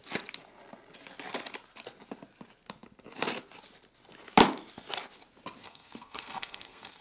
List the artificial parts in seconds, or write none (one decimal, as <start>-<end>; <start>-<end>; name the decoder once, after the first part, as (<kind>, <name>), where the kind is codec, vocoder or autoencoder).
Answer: 5.6-7.0 (codec, SNAC)